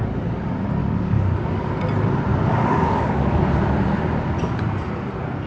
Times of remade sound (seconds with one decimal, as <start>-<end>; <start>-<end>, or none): 0.8-1.7; 2.3-3.4